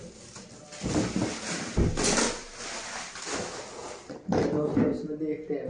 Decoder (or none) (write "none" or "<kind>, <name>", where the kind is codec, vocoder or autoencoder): none